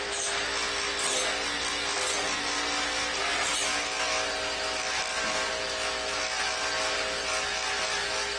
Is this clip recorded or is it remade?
recorded